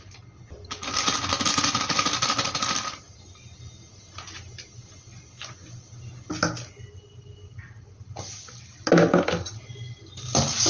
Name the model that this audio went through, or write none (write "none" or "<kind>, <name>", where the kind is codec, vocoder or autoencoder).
none